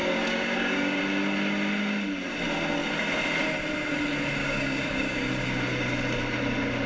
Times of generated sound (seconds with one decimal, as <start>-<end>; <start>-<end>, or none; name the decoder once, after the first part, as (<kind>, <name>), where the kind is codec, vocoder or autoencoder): 0.0-1.0 (codec, DAC); 4.4-5.3